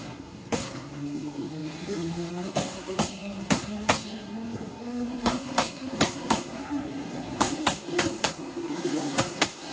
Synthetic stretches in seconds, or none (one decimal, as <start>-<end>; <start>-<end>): 0.0-9.7